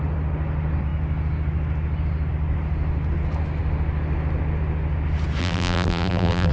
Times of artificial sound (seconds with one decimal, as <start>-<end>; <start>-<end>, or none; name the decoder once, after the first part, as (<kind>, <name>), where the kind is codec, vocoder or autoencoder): 5.4-6.5 (vocoder, BigVGAN v2)